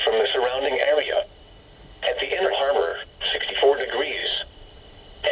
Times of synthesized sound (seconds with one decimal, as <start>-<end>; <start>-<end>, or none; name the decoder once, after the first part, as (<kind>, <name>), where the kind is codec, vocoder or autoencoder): 0.8-1.5 (vocoder, WaveNeXt); 2.9-3.5; 4.2-5.3